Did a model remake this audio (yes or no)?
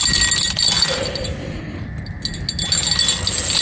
no